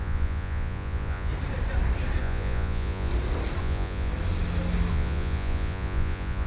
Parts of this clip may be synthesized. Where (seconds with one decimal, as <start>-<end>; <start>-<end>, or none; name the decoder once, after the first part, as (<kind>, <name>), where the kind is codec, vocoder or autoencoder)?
0.0-1.3 (vocoder, Vocos); 2.2-3.1; 3.6-4.1; 4.9-6.5